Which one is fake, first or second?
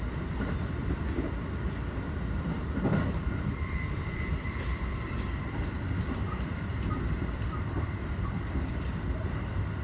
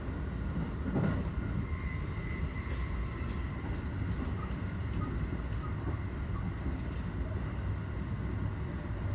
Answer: first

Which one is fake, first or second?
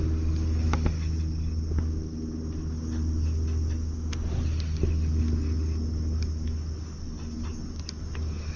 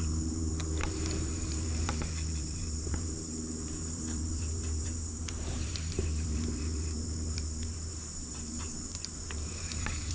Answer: second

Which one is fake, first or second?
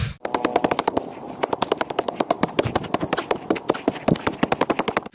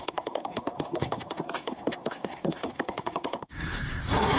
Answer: second